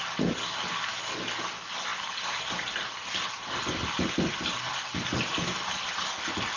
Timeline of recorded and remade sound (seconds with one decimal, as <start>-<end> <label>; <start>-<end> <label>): 0.0-6.6 recorded